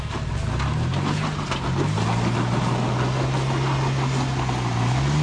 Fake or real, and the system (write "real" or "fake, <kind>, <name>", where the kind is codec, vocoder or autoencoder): real